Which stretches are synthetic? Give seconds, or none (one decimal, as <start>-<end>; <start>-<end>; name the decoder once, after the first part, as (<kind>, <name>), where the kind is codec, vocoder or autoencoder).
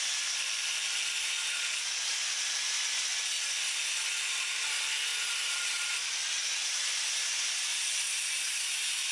none